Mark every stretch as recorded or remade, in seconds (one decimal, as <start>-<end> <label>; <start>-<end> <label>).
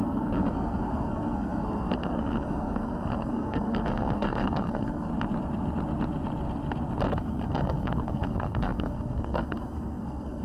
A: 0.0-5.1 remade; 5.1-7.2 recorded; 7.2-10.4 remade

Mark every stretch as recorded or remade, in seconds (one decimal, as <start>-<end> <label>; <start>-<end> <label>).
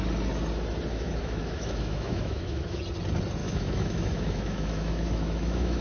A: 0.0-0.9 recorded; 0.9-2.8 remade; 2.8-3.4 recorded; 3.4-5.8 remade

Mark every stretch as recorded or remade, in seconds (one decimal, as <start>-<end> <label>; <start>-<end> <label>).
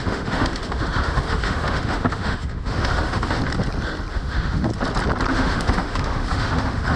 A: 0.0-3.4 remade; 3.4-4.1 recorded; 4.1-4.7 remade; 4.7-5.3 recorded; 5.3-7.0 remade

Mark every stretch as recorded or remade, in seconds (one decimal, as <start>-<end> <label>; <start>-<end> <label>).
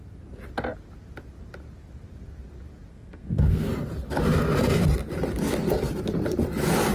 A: 0.0-2.9 recorded; 2.9-3.7 remade; 3.7-6.9 recorded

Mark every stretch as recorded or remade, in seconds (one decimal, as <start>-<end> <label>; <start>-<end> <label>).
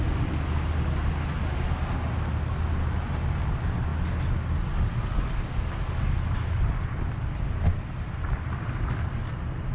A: 0.0-9.7 recorded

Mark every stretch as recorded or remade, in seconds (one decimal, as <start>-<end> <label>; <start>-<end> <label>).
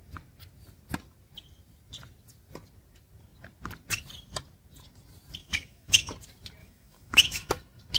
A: 0.0-5.4 recorded; 5.4-6.1 remade; 6.1-6.6 recorded; 6.6-7.5 remade; 7.5-8.0 recorded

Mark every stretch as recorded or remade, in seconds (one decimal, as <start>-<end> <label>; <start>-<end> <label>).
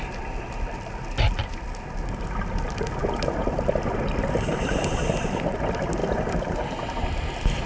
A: 0.0-7.7 recorded